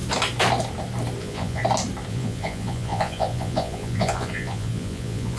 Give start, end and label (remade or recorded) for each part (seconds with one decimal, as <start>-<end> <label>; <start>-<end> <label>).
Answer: 0.0-1.2 recorded; 1.2-1.6 remade; 1.6-2.1 recorded; 2.1-5.4 remade

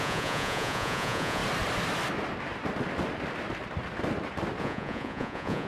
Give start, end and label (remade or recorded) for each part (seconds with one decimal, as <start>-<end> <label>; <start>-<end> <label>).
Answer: 0.0-1.4 remade; 1.4-4.6 recorded; 4.6-5.7 remade

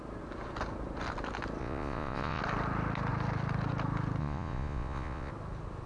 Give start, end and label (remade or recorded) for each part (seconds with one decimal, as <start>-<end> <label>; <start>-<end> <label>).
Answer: 0.0-1.6 recorded; 1.6-2.4 remade; 2.4-4.2 recorded; 4.2-5.3 remade; 5.3-5.9 recorded

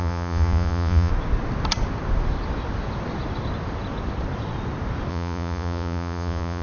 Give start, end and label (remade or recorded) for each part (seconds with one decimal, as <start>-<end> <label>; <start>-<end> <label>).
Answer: 0.0-1.1 remade; 1.1-5.1 recorded; 5.1-6.6 remade

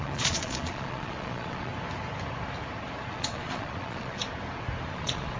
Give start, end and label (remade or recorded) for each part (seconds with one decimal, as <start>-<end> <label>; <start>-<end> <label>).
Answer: 0.0-1.7 remade; 1.7-3.1 recorded; 3.1-4.2 remade; 4.2-4.9 recorded; 4.9-5.4 remade

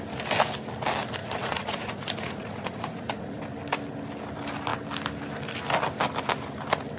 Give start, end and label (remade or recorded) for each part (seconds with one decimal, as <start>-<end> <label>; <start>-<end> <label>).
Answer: 0.0-1.2 recorded; 1.2-3.4 remade; 3.4-7.0 recorded